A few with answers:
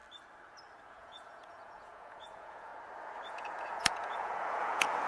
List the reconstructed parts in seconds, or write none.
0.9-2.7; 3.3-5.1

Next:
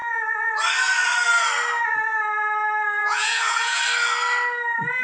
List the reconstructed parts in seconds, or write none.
3.0-3.8

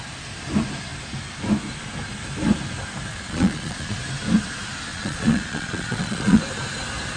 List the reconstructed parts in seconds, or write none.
3.1-4.0; 4.9-6.4

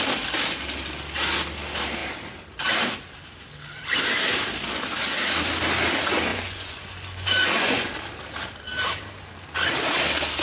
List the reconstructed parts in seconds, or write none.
6.3-7.9

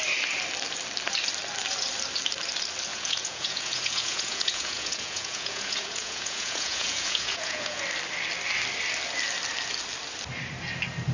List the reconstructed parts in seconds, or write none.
2.9-7.8